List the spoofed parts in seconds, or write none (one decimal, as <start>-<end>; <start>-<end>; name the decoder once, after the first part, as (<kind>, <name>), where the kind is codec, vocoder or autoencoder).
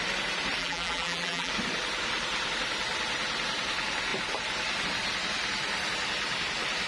0.6-1.5 (vocoder, BigVGAN v2)